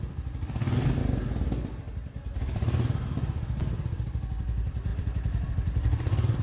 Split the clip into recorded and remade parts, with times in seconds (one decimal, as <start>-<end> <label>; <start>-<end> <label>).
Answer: 0.0-1.0 remade; 1.0-2.4 recorded; 2.4-6.4 remade